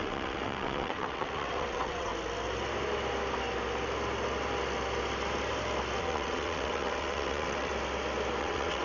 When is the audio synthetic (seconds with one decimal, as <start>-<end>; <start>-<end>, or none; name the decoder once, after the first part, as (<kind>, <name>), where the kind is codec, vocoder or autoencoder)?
0.0-2.1 (vocoder, WaveNeXt); 6.0-7.7; 8.4-8.8